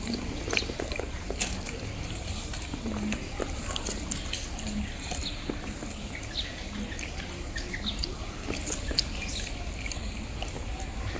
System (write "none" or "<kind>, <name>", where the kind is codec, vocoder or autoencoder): none